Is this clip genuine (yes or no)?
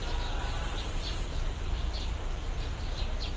yes